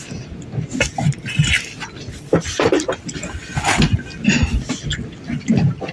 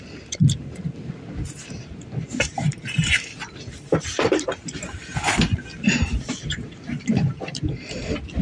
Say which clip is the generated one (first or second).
second